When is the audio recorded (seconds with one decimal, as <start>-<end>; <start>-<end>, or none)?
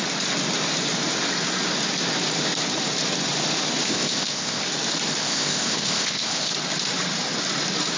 0.0-3.8; 4.6-5.2; 6.5-8.0